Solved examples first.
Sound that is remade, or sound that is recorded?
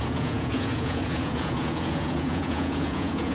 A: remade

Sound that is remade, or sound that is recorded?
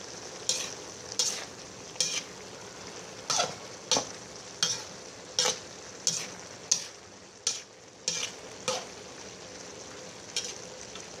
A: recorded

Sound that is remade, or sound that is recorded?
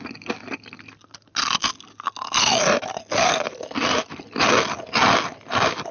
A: recorded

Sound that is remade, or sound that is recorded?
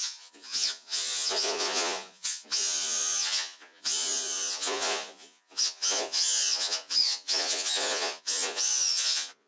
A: remade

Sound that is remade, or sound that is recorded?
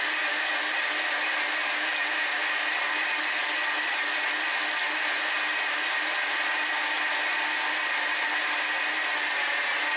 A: recorded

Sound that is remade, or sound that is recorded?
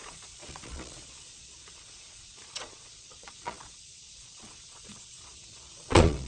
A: remade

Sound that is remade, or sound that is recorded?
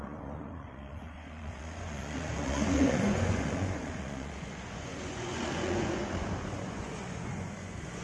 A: remade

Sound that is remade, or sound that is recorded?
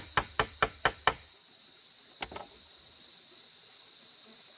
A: recorded